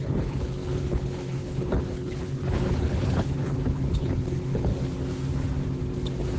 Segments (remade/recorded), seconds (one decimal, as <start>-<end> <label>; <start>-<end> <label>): 0.0-4.7 remade; 4.7-6.4 recorded